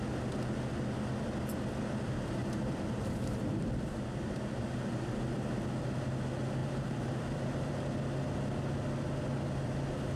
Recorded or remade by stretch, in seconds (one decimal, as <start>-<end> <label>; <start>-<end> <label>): 0.0-2.4 recorded; 2.4-3.6 remade; 3.6-5.3 recorded; 5.3-5.8 remade; 5.8-6.6 recorded; 6.6-7.7 remade; 7.7-10.2 recorded